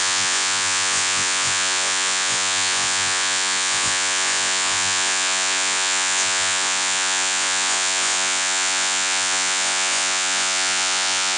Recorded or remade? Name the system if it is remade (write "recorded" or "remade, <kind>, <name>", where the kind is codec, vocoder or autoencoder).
remade, vocoder, Vocos